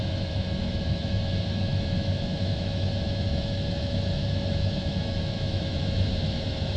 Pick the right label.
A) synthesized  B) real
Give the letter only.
A